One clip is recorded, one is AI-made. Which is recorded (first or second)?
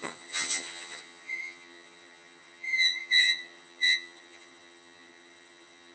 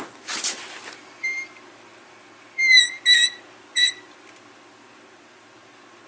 second